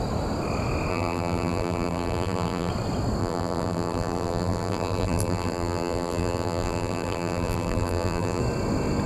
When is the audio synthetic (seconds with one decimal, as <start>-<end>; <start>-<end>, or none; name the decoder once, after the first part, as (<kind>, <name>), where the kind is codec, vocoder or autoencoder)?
0.9-2.7 (vocoder, BigVGAN v2); 3.2-8.4